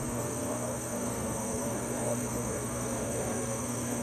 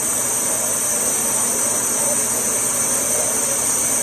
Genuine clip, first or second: second